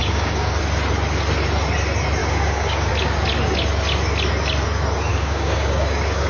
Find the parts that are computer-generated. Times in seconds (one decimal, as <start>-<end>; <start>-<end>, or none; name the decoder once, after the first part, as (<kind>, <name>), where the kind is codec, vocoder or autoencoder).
0.0-0.6 (codec, DAC); 2.2-2.9; 5.1-6.3